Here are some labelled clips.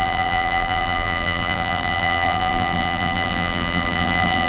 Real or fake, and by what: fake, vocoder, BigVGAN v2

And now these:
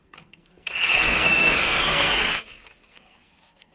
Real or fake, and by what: fake, codec, SNAC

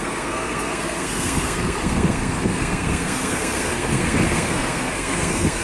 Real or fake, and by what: fake, codec, SNAC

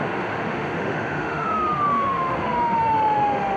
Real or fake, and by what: fake, autoencoder, DAC-VAE